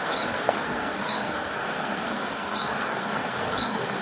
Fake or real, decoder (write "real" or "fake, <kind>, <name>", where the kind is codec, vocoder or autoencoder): fake, codec, SNAC